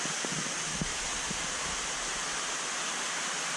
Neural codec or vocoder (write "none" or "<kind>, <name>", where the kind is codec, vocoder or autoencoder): none